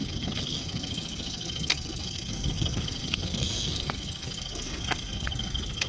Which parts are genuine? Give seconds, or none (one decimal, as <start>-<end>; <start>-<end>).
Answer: none